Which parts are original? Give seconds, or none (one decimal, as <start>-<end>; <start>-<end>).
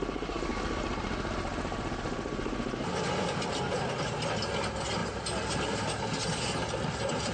0.0-7.3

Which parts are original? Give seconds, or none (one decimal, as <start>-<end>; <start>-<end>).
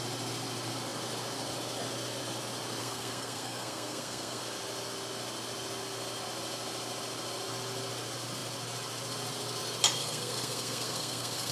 0.0-2.8; 4.4-10.0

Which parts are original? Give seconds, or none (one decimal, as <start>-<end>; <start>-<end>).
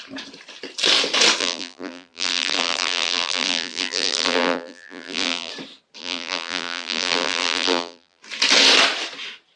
0.0-1.4; 5.5-6.0; 8.2-9.6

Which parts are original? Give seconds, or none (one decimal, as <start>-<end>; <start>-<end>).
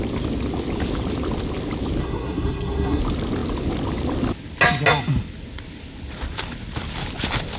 0.0-2.0; 3.0-7.6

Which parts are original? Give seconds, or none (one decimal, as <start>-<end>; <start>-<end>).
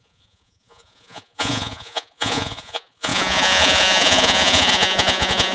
none